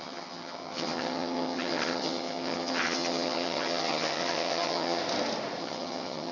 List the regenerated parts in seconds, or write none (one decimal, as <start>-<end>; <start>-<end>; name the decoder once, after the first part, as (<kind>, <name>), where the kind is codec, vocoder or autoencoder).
0.0-5.0 (vocoder, HiFi-GAN); 5.6-6.3